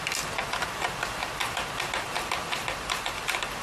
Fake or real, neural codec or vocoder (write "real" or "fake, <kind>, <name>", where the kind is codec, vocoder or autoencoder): real